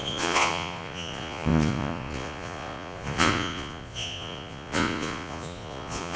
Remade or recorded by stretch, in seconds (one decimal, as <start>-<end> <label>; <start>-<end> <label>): 0.0-6.2 remade